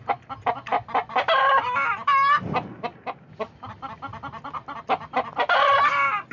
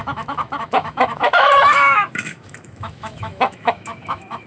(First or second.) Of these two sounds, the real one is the first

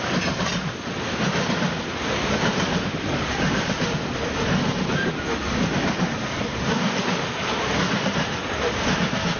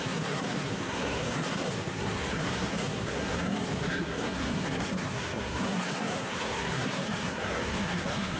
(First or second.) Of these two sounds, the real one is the first